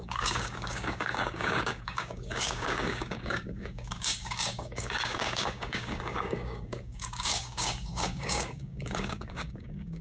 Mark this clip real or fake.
fake